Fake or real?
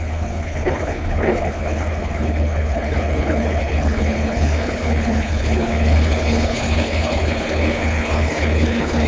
fake